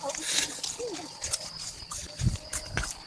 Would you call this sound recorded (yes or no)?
yes